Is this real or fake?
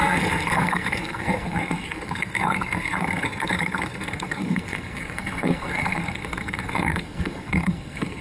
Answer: fake